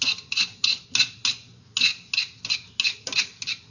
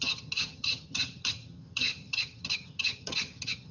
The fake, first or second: second